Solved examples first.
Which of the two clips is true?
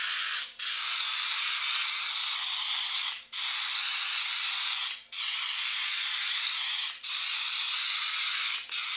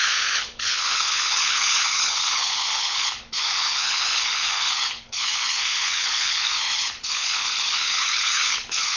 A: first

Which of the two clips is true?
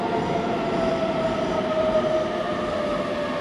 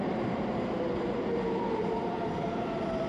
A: first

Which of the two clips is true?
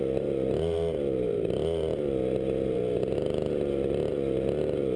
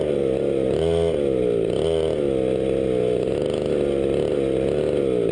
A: second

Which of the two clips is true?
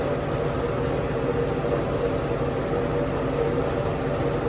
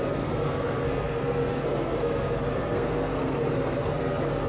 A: first